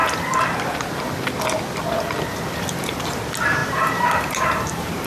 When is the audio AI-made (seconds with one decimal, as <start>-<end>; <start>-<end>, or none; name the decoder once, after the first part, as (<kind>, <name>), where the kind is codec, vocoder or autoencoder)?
2.6-5.1 (vocoder, BigVGAN v2)